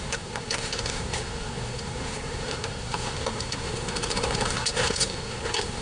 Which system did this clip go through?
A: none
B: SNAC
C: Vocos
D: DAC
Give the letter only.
B